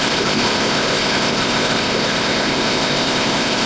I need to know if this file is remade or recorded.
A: remade